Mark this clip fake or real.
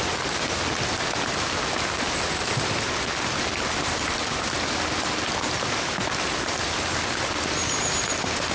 real